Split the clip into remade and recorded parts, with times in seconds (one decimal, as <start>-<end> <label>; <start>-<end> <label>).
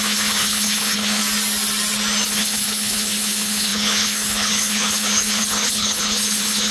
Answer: 0.0-1.2 remade; 1.2-2.3 recorded; 2.3-6.7 remade